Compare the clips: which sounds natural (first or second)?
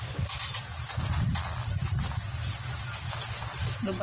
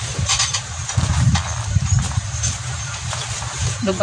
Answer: first